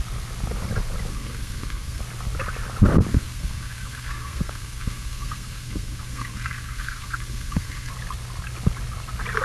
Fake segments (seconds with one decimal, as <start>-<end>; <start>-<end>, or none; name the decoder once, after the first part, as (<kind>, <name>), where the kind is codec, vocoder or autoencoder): 1.1-2.0 (codec, SNAC); 3.1-7.9